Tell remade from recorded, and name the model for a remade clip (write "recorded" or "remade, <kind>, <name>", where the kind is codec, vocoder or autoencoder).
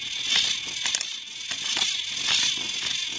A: recorded